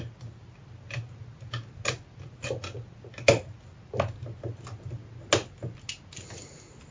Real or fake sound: real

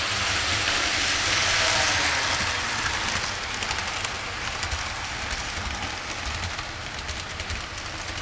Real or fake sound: real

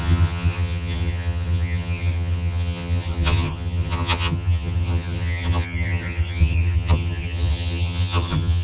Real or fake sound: fake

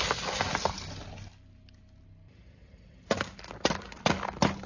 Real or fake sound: real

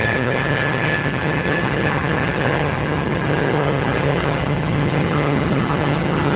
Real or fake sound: fake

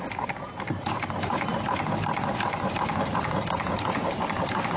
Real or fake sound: real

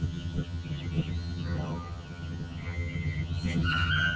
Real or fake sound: fake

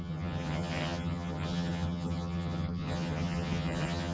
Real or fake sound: fake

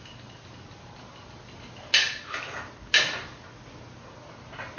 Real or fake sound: real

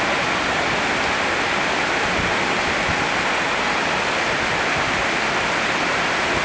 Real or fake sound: real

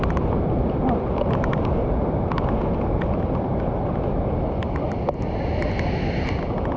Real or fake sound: real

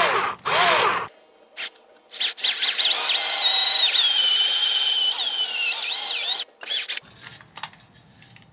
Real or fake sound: real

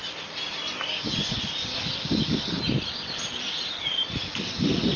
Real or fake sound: real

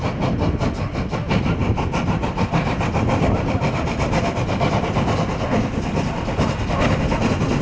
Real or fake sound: real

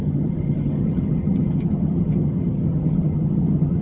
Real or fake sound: fake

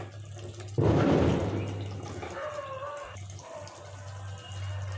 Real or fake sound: real